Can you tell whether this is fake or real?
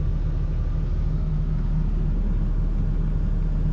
real